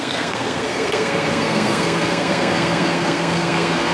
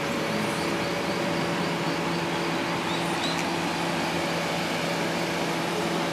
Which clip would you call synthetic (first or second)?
first